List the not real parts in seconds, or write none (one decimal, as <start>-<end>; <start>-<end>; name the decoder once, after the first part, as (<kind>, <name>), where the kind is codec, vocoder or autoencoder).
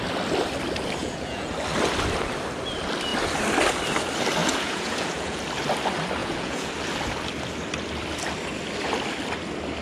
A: 1.0-1.5 (vocoder, Vocos); 4.4-5.4; 6.2-6.7